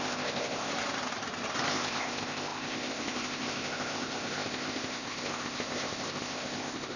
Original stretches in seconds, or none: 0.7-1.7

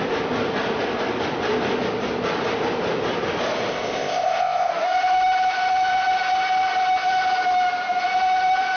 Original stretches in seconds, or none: 0.0-3.7; 4.7-8.8

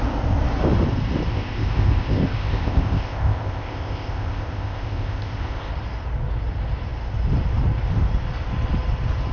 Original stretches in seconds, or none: 0.0-1.3; 5.7-9.3

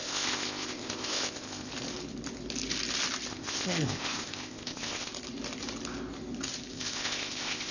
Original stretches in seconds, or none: 1.7-3.3; 5.1-6.7